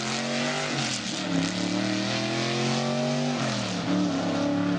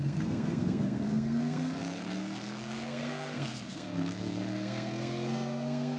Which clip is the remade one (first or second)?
second